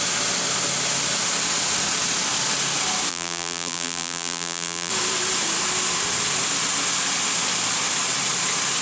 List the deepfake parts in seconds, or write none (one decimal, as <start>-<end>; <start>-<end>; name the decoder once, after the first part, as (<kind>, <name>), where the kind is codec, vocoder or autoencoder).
3.1-4.9 (vocoder, BigVGAN v2)